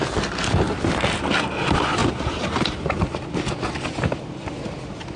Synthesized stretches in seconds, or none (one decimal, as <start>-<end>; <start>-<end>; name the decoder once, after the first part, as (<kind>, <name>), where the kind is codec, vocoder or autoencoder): 2.0-2.6 (vocoder, BigVGAN v2)